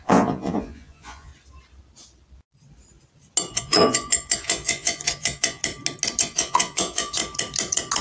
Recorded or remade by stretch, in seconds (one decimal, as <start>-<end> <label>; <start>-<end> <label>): 0.0-1.3 remade; 1.3-3.5 recorded; 3.5-5.6 remade; 5.6-6.2 recorded; 6.2-7.2 remade; 7.2-8.0 recorded